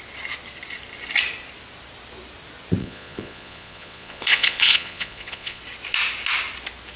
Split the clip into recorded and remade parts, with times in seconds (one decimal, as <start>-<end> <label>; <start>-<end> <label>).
0.0-2.8 recorded; 2.8-5.6 remade; 5.6-7.0 recorded